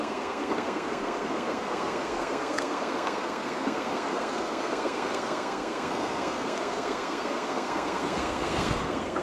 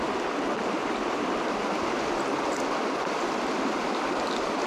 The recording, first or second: second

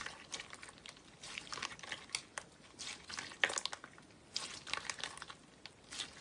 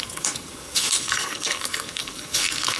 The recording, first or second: first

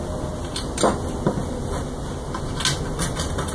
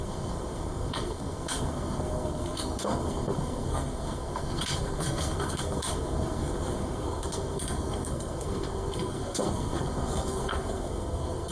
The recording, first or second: first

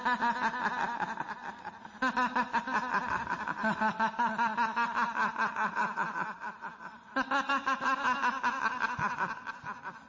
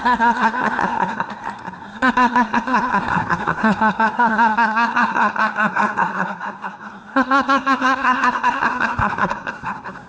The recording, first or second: first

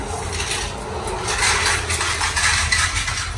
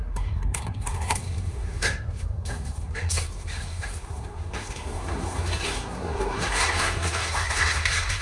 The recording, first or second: first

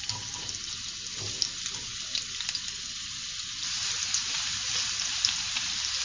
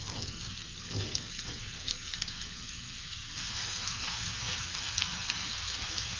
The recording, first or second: first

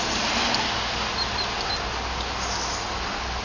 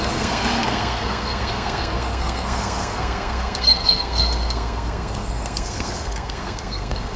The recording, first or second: first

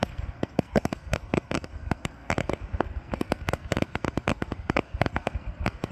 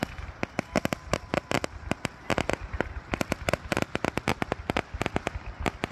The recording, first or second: second